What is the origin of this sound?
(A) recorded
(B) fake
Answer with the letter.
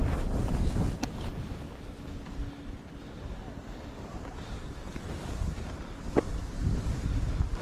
A